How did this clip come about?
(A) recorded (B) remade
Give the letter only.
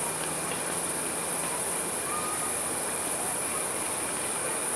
A